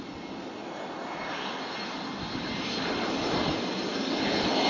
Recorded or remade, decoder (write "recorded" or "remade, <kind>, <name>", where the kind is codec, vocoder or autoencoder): recorded